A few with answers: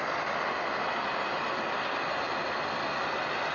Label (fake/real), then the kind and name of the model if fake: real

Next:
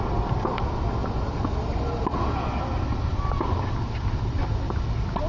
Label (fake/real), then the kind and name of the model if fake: real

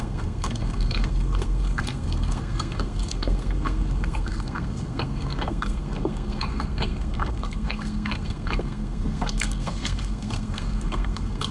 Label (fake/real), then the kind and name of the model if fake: fake, codec, SNAC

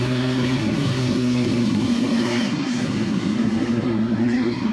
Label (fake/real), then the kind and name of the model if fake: fake, codec, SNAC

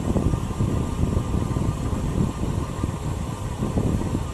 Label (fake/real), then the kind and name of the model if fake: real